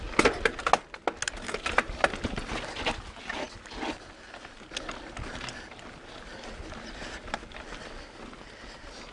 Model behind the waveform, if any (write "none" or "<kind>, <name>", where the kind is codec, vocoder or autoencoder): none